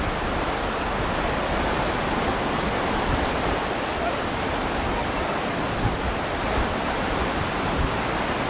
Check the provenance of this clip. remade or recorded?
recorded